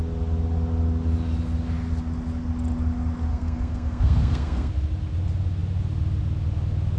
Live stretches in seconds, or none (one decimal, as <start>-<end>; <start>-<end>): 0.0-3.3; 4.7-7.0